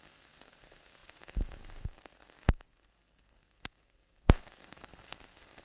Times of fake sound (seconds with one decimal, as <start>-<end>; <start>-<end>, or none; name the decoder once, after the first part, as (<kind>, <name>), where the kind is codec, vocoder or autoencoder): 0.0-5.6 (codec, SNAC)